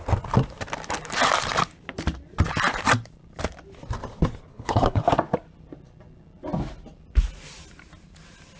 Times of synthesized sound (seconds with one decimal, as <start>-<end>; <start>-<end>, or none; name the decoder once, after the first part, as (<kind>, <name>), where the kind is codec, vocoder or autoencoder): 4.5-5.0 (codec, HILCodec)